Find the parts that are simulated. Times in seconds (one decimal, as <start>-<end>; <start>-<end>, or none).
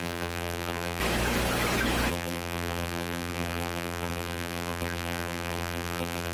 0.0-1.0; 2.1-6.3